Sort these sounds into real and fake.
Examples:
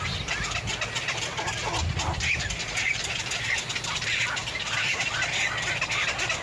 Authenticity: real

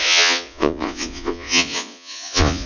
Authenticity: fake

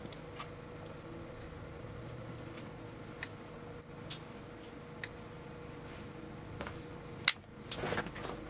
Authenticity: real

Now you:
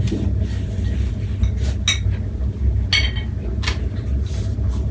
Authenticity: real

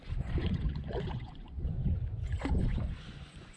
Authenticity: fake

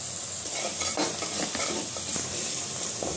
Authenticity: real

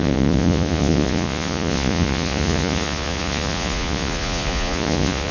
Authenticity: fake